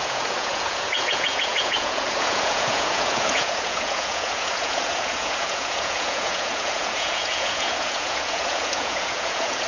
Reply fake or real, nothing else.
fake